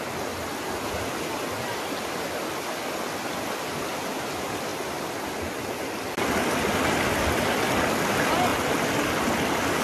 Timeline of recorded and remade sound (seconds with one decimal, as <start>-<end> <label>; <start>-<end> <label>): 0.0-9.8 recorded

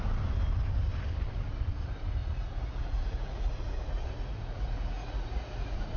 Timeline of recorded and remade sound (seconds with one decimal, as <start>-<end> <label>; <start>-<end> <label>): 0.0-2.2 recorded; 2.2-6.0 remade

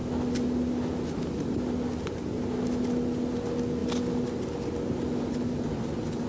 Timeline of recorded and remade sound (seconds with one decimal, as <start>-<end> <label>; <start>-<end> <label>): 0.0-6.3 recorded